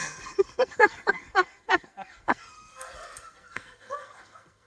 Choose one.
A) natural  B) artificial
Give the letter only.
B